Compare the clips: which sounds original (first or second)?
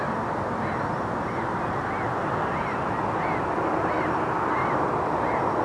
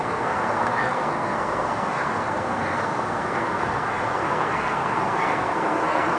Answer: first